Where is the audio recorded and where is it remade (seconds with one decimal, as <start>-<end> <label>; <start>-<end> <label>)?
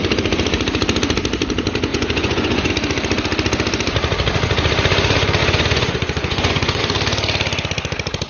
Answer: 0.0-1.9 recorded; 1.9-2.7 remade; 2.7-5.4 recorded; 5.4-6.8 remade; 6.8-8.3 recorded